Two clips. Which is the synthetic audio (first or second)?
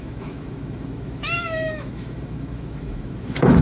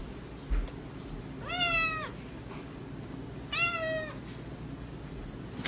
first